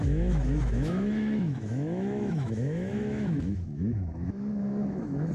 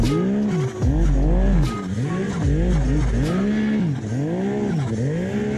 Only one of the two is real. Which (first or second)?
second